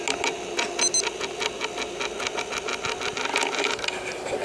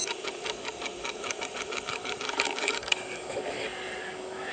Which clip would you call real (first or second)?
first